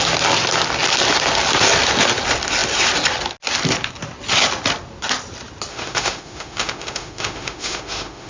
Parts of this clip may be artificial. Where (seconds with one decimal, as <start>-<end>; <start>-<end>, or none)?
5.7-8.3